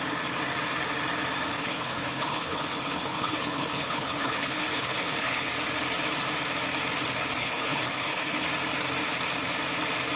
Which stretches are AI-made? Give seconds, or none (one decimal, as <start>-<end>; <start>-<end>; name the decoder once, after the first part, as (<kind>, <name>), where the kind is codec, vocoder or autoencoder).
1.5-5.5 (codec, HILCodec); 7.4-8.4